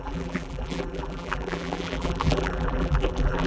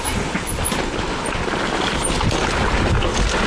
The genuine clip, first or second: second